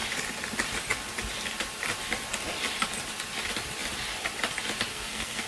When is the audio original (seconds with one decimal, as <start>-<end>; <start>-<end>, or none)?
0.0-4.9